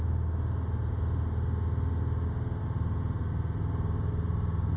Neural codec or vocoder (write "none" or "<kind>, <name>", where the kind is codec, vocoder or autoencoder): none